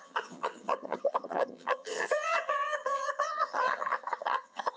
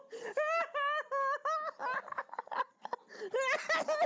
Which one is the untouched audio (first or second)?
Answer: second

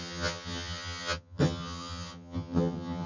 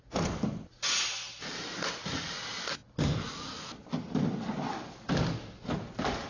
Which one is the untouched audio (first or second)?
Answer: second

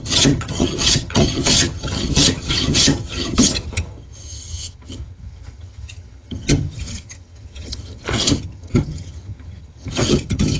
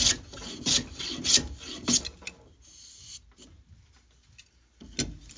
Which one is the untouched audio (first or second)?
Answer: second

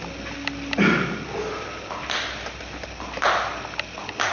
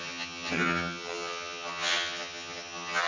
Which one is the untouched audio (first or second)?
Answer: first